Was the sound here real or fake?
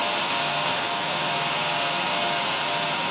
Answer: real